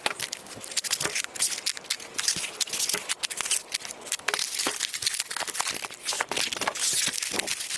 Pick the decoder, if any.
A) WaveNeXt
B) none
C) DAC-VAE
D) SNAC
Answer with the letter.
B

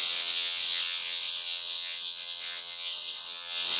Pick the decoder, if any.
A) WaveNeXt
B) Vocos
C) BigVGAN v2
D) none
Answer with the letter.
A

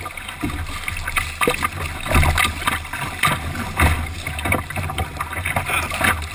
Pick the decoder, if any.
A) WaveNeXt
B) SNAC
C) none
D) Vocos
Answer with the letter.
C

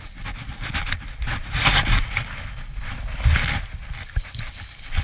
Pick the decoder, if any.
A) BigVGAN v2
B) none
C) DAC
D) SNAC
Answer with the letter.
B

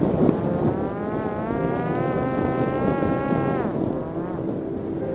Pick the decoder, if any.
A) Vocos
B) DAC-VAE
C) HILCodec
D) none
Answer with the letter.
D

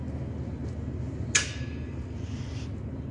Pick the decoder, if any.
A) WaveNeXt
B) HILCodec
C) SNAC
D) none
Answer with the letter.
D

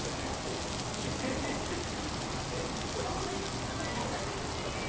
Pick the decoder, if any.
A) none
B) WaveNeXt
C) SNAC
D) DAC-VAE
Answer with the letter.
A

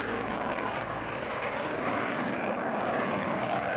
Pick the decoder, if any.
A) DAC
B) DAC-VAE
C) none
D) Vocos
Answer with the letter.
A